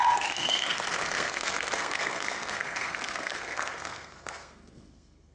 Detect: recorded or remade remade